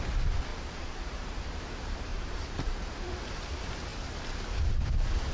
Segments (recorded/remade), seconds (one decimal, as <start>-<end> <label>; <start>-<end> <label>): 0.0-0.5 recorded; 0.5-1.6 remade; 1.6-2.1 recorded; 2.1-3.1 remade; 3.1-5.3 recorded